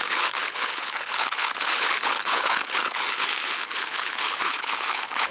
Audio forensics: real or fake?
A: fake